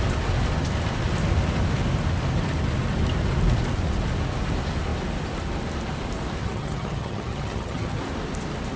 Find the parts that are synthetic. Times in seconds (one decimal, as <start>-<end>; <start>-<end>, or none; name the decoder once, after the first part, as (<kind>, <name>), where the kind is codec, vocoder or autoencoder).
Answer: 6.4-8.0 (vocoder, HiFi-GAN)